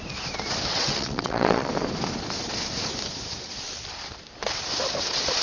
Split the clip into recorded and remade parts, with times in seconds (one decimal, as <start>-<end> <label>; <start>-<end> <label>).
0.0-0.7 recorded; 0.7-1.7 remade; 1.7-5.4 recorded